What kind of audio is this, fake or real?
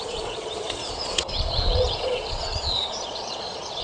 fake